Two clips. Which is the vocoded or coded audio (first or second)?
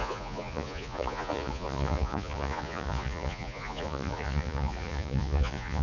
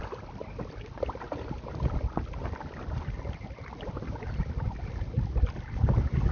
first